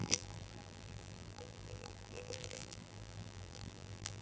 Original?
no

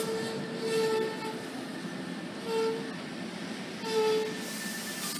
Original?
yes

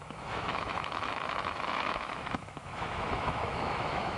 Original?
no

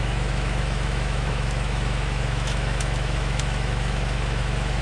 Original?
no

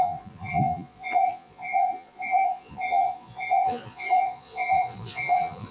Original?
no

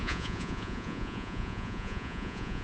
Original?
no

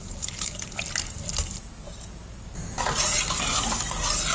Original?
yes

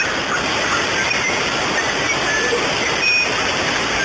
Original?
yes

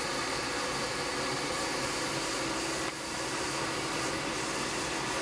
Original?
yes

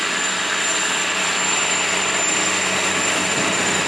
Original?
yes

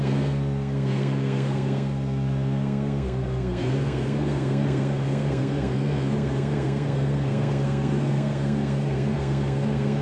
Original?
no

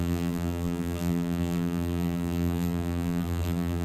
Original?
no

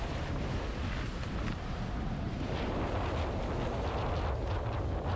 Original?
yes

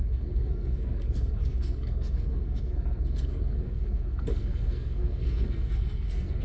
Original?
no